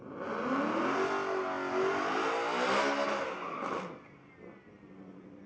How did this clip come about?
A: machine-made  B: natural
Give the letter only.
B